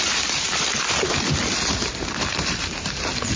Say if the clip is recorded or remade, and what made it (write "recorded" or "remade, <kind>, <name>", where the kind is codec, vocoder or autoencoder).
recorded